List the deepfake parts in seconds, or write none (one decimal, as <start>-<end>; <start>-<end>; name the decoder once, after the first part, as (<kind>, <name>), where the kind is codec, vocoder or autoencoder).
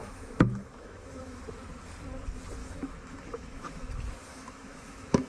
0.0-1.4 (autoencoder, DAC-VAE); 2.6-3.9; 4.3-5.3